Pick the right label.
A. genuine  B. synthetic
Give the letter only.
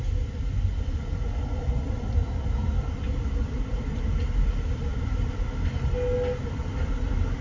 A